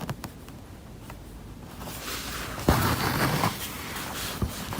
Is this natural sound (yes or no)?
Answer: yes